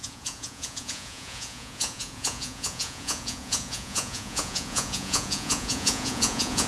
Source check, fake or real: fake